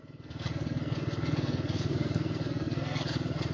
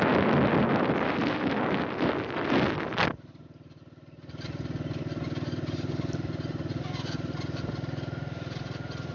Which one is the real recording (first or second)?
second